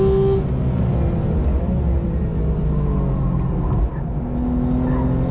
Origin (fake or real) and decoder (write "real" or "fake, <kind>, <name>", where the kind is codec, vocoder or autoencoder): real